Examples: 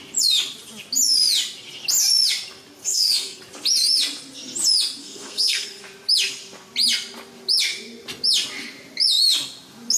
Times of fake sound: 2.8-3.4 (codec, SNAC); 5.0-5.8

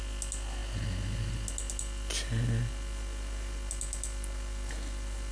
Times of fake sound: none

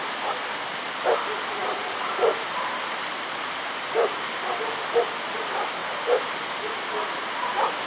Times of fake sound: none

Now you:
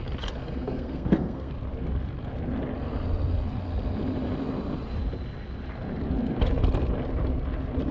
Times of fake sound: 0.4-1.5 (codec, SNAC)

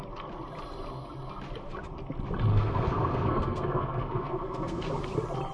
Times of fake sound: 2.5-4.9 (codec, SNAC)

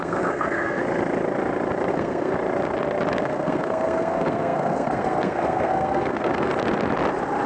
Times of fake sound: 0.0-0.8 (codec, SNAC); 1.9-2.3; 3.2-6.5

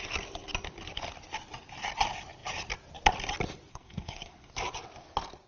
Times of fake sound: 3.7-4.5 (codec, SNAC)